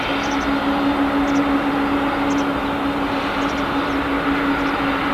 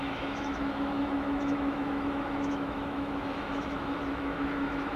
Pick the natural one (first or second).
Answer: first